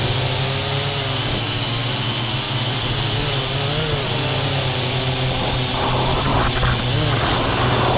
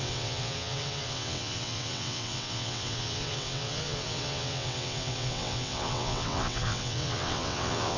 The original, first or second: first